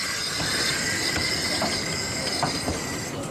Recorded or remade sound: recorded